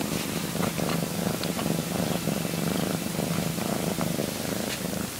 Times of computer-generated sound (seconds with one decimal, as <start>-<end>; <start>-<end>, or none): 4.2-4.7